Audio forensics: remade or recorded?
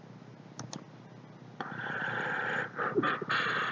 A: recorded